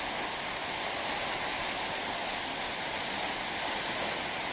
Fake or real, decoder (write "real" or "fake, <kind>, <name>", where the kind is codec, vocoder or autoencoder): real